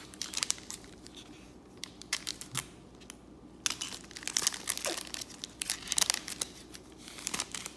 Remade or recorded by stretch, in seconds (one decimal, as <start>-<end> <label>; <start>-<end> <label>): 0.0-2.3 remade; 2.3-6.4 recorded; 6.4-7.8 remade